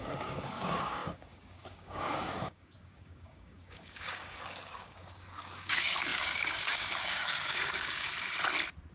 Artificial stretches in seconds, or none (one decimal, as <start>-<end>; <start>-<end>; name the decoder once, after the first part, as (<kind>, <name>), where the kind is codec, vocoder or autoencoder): 0.0-8.1 (codec, DAC)